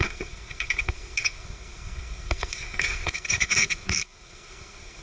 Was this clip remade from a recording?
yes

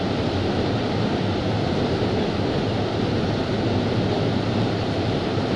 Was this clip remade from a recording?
no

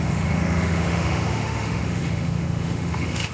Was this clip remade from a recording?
yes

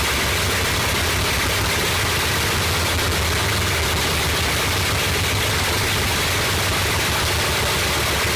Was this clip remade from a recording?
no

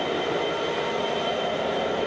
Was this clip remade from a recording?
no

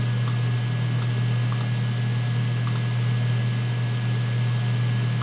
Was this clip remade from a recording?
no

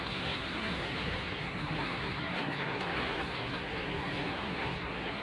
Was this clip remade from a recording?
yes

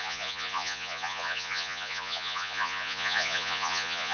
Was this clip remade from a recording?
yes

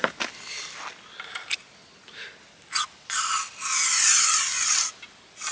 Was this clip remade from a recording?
no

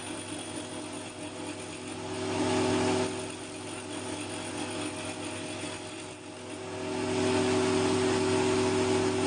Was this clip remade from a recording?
no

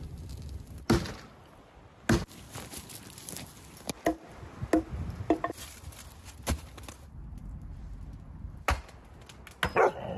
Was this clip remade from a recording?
no